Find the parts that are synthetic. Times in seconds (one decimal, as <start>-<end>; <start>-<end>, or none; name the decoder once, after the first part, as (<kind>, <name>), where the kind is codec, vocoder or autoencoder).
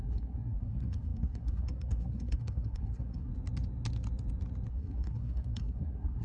0.0-3.3 (codec, SNAC); 4.7-6.2